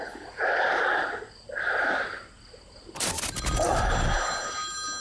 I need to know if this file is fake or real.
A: real